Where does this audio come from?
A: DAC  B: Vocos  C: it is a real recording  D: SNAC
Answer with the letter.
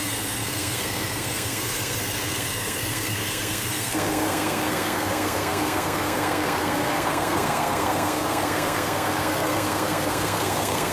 D